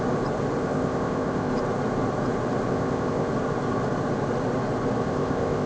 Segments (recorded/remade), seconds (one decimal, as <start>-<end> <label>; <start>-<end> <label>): 0.0-0.6 recorded; 0.6-1.5 remade; 1.5-2.7 recorded; 2.7-3.3 remade; 3.3-5.0 recorded; 5.0-5.7 remade